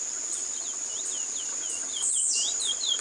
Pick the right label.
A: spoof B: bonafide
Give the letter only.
B